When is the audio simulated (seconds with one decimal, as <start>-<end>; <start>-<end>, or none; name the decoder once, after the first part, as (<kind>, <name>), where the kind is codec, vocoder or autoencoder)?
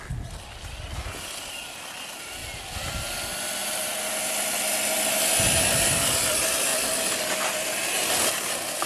none